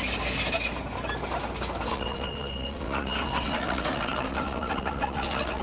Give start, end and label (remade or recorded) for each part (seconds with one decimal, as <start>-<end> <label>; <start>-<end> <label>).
0.0-1.9 recorded; 1.9-5.6 remade